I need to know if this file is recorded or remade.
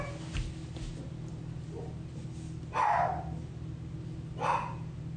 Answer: recorded